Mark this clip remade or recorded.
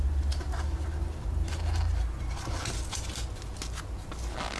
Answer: recorded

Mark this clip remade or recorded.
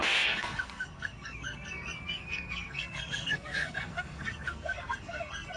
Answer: remade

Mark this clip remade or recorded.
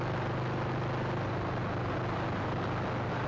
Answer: recorded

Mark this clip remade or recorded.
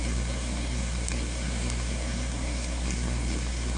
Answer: remade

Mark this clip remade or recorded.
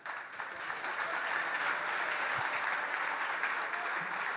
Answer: recorded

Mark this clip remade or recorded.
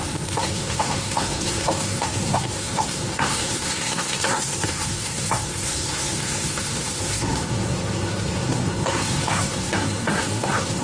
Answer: remade